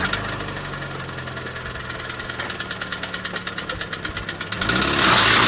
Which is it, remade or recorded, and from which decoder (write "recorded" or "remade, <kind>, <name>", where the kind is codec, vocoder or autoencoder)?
recorded